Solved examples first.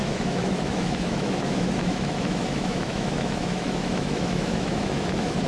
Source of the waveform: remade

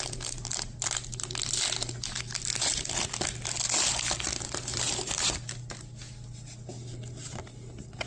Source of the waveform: recorded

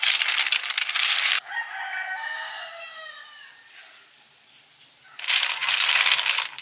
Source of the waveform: recorded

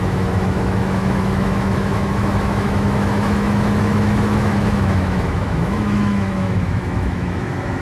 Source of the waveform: remade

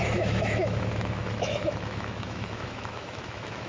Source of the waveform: remade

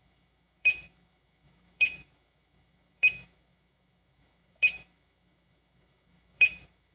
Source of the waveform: remade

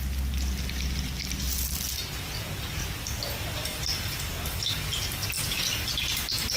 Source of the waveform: recorded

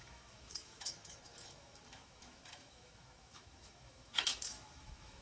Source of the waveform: remade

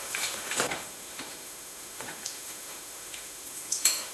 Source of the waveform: remade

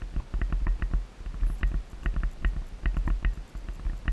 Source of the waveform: recorded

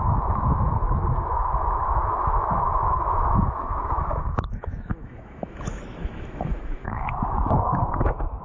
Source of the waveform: remade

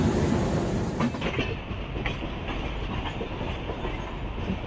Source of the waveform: recorded